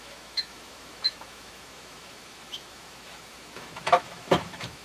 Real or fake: fake